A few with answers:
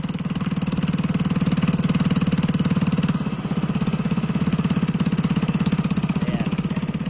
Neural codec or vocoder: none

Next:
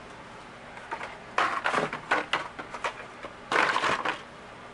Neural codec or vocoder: none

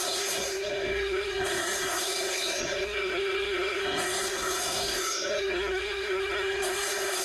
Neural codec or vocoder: codec, SNAC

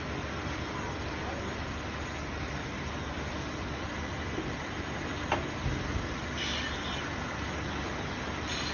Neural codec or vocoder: none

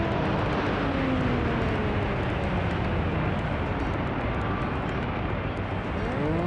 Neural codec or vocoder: none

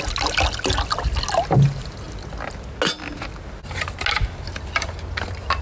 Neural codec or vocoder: none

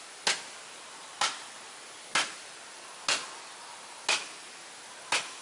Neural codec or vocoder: none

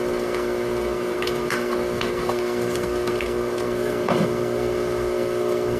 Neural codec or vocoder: codec, SNAC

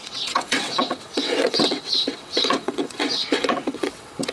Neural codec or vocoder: vocoder, WaveNeXt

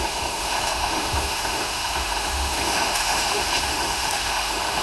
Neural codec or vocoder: autoencoder, DAC-VAE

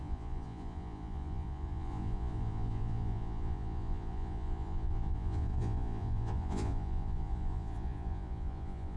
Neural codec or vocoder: vocoder, Vocos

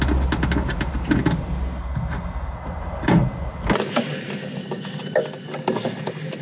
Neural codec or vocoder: none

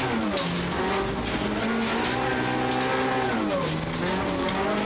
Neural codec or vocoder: none